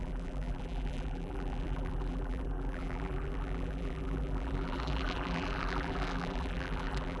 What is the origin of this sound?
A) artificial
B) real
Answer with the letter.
A